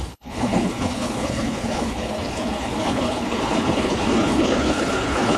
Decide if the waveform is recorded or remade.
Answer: remade